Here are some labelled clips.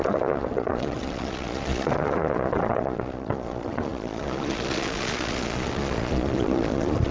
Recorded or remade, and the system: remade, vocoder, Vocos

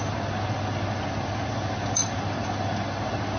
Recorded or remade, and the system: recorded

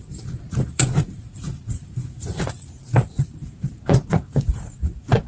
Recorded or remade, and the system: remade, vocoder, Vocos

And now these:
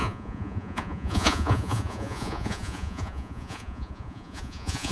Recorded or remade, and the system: remade, vocoder, Vocos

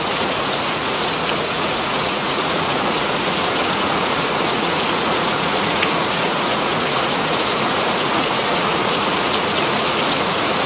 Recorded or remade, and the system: remade, vocoder, Vocos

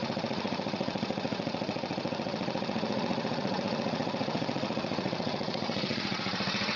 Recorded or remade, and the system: remade, vocoder, Vocos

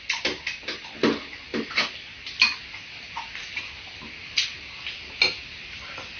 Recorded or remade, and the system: recorded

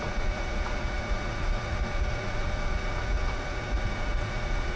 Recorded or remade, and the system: remade, vocoder, Vocos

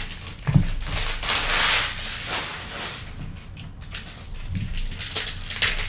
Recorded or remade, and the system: recorded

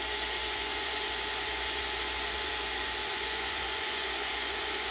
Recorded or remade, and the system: remade, vocoder, Vocos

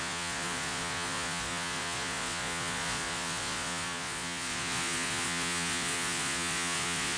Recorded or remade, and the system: remade, vocoder, Vocos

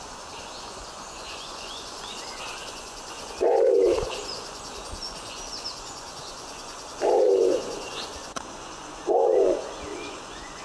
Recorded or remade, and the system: remade, vocoder, Vocos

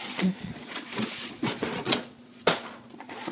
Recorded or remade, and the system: remade, vocoder, Vocos